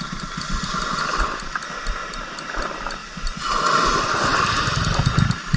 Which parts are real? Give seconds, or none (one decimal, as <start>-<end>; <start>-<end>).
0.0-5.6